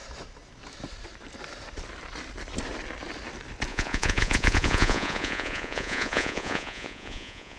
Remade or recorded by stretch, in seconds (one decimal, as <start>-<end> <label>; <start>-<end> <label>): 0.0-3.7 recorded; 3.7-7.6 remade